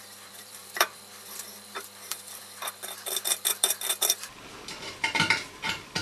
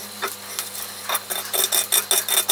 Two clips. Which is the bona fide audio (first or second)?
second